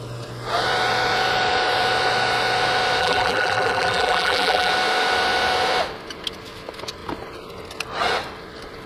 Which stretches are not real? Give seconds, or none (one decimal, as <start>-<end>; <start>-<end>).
3.0-4.7